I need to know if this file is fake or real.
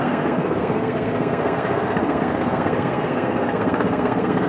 fake